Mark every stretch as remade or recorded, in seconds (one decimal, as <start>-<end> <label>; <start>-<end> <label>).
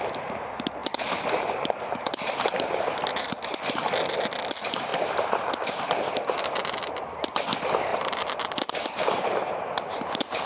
0.0-0.8 recorded; 0.8-3.6 remade; 3.6-4.9 recorded; 4.9-5.8 remade; 5.8-7.9 recorded; 7.9-9.5 remade; 9.5-10.5 recorded